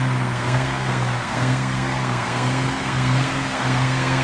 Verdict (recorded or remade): remade